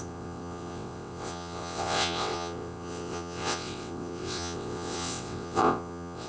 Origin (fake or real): fake